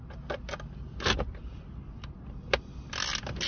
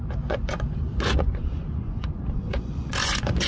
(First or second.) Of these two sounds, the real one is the first